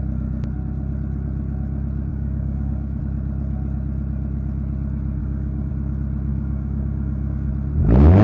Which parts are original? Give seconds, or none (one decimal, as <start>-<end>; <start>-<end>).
0.0-2.1; 3.0-5.2; 5.7-6.3; 7.5-8.2